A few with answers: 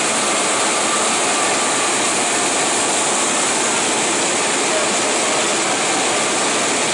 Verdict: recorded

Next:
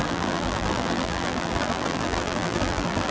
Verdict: remade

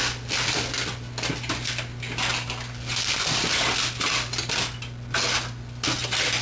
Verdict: recorded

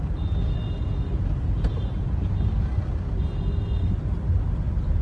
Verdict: recorded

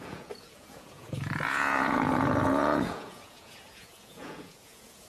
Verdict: remade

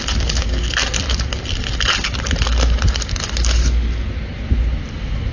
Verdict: recorded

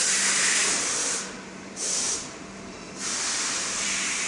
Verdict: remade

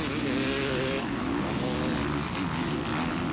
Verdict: recorded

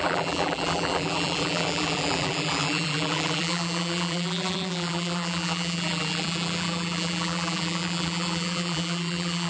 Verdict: remade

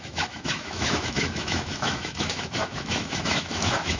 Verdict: remade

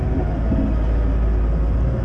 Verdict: recorded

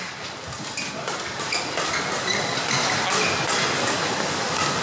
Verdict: recorded